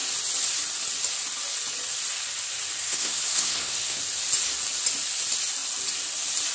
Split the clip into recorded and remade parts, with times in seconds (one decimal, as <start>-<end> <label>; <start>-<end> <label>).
0.0-2.8 recorded; 2.8-4.0 remade; 4.0-6.5 recorded